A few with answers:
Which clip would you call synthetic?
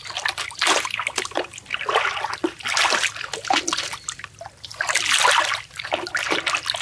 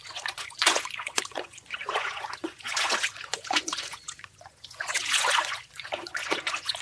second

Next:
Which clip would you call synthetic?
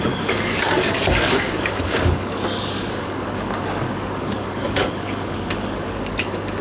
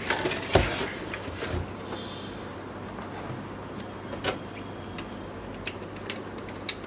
first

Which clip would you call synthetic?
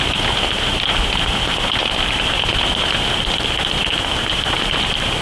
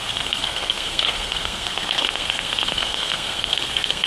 second